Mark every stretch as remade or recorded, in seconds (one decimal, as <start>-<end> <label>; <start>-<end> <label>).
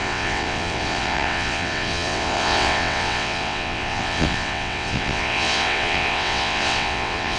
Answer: 0.0-7.4 remade